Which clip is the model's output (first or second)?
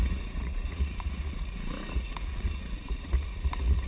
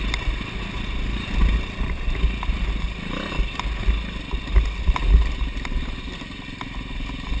first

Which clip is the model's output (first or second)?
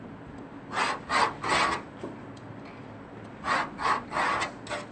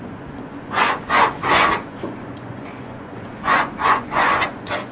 second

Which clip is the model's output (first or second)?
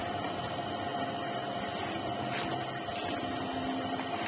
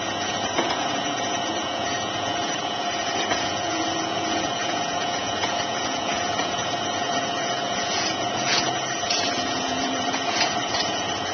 second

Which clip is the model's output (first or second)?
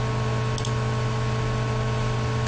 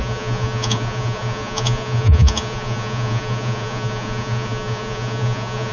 second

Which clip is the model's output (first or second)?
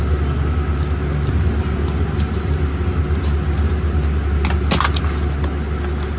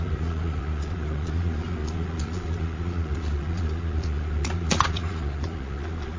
second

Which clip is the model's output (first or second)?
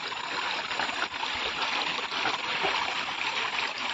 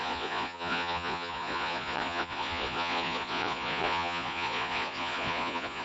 second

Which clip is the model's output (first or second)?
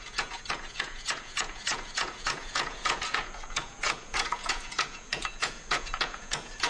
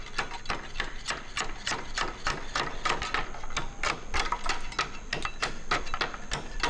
first